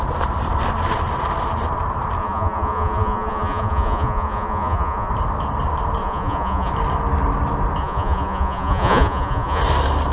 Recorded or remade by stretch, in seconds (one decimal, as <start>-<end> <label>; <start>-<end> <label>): 0.0-2.2 recorded; 2.2-5.1 remade; 5.1-6.0 recorded; 6.0-6.7 remade; 6.7-7.8 recorded; 7.8-9.6 remade; 9.6-10.1 recorded